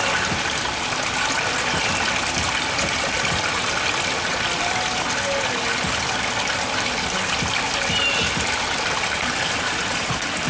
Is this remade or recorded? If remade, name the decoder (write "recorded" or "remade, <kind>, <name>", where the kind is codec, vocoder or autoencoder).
recorded